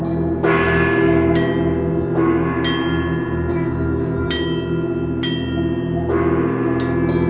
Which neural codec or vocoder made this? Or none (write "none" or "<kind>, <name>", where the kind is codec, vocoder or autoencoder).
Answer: none